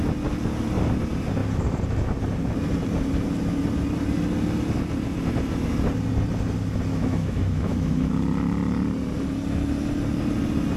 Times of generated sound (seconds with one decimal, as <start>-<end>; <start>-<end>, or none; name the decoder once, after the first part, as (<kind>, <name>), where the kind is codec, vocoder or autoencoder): 6.9-8.1 (autoencoder, DAC-VAE)